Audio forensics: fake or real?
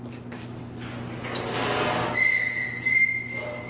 real